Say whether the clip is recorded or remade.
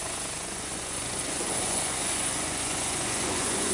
remade